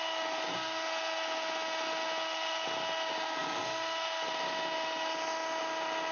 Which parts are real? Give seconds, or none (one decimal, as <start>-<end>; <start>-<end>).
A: 0.0-6.1